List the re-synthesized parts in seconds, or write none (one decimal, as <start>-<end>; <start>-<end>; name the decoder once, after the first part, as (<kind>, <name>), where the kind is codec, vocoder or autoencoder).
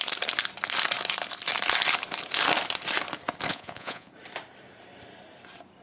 3.5-4.1 (vocoder, Vocos)